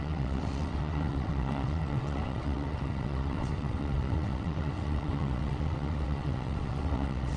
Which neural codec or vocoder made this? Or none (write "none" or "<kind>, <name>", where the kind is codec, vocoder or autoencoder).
vocoder, WaveNeXt